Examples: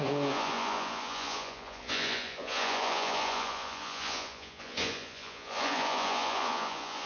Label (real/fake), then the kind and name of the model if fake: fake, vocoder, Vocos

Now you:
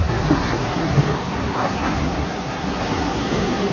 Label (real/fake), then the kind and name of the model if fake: fake, codec, SNAC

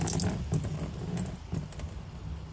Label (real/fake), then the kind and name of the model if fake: real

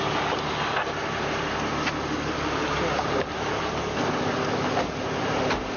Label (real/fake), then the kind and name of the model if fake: real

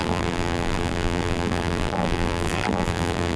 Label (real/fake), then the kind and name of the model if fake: fake, vocoder, BigVGAN v2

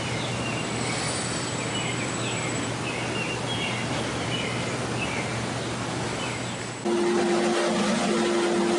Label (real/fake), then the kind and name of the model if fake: real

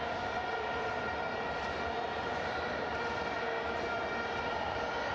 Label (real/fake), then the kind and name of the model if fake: real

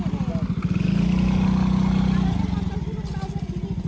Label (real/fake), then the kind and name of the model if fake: real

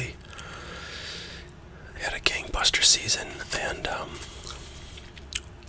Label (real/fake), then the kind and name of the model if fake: real